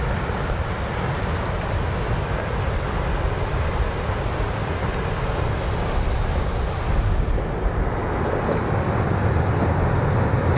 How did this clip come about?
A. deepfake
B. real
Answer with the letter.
B